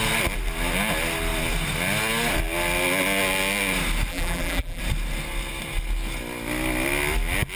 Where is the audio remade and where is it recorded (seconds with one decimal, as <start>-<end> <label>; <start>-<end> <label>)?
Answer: 0.0-4.1 recorded; 4.1-4.8 remade; 4.8-7.6 recorded